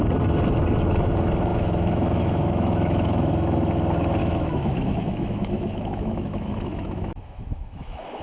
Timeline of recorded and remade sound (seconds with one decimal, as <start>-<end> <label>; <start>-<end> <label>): 0.0-1.5 recorded; 1.5-3.3 remade; 3.3-4.2 recorded; 4.2-8.2 remade